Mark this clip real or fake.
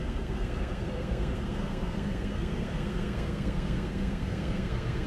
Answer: fake